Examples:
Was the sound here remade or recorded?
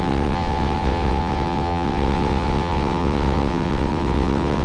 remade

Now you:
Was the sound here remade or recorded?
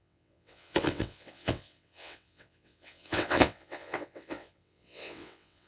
remade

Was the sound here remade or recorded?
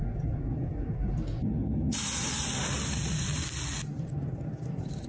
recorded